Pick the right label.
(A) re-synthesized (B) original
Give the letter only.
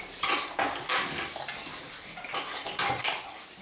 B